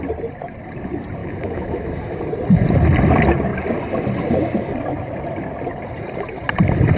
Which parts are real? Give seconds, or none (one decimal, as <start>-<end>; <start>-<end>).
0.0-1.2; 2.2-7.0